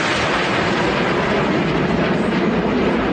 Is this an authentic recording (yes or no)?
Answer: yes